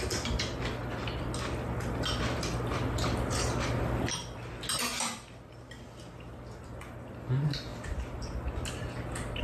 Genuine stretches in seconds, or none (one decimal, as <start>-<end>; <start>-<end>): 0.0-9.4